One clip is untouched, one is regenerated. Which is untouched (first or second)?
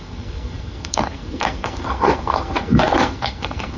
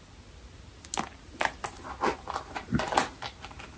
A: second